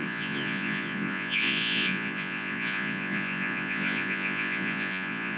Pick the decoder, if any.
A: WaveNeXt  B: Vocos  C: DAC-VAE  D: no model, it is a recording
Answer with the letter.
B